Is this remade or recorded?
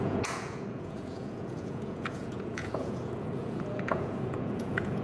remade